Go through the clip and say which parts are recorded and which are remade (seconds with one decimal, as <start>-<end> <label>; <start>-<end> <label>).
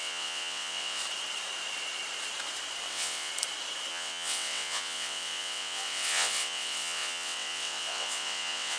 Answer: 0.0-1.0 remade; 1.0-2.9 recorded; 2.9-3.3 remade; 3.3-3.9 recorded; 3.9-8.8 remade